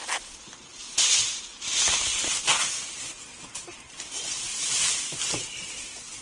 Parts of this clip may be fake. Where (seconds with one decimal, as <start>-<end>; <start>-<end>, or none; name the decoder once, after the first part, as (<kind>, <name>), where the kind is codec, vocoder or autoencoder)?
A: 0.7-1.4 (vocoder, BigVGAN v2); 2.1-2.7; 3.6-5.7